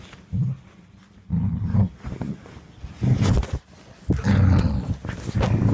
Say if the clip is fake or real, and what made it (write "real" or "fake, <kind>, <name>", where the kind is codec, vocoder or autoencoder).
real